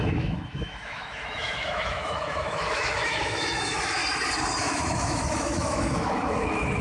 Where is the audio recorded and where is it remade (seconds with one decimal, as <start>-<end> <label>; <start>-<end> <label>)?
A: 0.0-4.0 remade; 4.0-4.6 recorded; 4.6-6.8 remade